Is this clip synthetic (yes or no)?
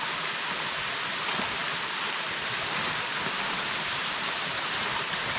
no